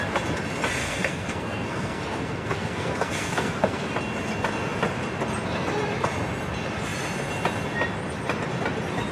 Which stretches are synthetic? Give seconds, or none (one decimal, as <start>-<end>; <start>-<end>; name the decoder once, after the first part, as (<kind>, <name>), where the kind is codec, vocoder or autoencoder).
0.8-3.9 (codec, SNAC)